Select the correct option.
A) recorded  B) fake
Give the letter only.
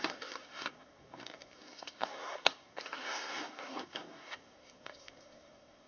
B